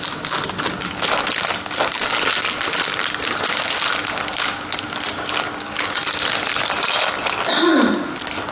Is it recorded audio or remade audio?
recorded